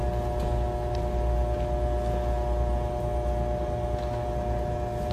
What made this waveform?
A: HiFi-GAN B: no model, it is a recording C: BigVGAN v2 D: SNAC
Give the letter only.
B